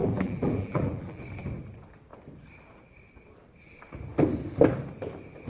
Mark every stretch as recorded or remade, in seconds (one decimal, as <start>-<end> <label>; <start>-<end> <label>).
0.0-1.2 remade; 1.2-5.5 recorded